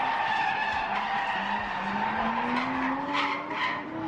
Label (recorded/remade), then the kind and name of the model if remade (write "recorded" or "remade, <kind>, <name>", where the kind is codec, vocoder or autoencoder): recorded